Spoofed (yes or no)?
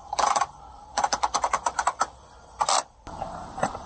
no